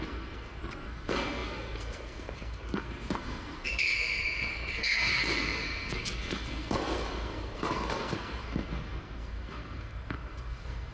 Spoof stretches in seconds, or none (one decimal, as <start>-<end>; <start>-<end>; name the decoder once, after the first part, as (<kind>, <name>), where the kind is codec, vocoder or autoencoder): 0.0-10.9 (codec, SNAC)

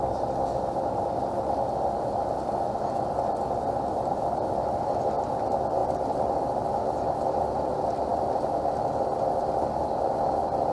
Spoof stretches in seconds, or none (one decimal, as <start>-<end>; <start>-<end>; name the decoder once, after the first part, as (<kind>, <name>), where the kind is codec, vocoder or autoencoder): none

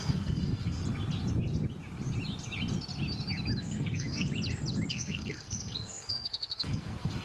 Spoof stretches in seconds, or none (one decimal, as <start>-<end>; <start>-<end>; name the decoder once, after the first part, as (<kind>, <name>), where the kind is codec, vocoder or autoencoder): 0.0-0.8 (codec, SNAC); 3.6-4.3; 4.9-7.2

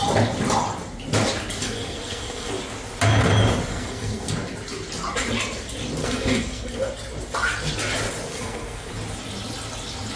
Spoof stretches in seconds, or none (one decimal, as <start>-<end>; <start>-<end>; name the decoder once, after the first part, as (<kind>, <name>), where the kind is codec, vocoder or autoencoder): 1.6-2.5 (codec, SNAC); 3.7-4.3; 6.0-6.9; 8.3-8.9

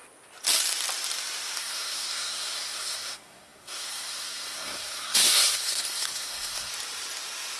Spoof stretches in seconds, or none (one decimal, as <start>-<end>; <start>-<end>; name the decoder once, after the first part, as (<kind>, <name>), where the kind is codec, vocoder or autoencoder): 1.6-6.7 (codec, SNAC)

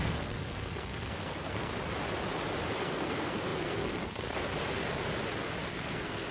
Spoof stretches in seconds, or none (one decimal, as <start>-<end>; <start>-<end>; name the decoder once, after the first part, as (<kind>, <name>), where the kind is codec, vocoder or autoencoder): 0.0-1.7 (codec, SNAC); 2.8-4.5; 5.7-6.3

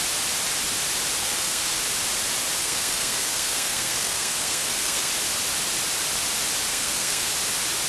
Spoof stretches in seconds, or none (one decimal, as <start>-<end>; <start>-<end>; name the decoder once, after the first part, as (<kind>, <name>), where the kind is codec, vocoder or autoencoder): 1.2-1.8 (codec, SNAC); 2.6-5.1; 6.7-7.3